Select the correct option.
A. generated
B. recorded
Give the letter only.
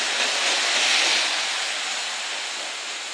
B